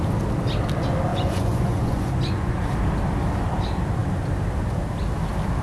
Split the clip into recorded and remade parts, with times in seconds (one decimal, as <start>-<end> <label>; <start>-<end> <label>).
0.0-1.1 recorded; 1.1-2.6 remade; 2.6-5.6 recorded